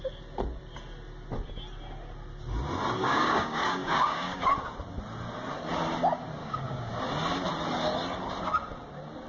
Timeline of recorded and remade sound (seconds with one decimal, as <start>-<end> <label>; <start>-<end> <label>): 0.0-3.0 recorded; 3.0-4.5 remade; 4.5-6.4 recorded; 6.4-6.9 remade; 6.9-9.3 recorded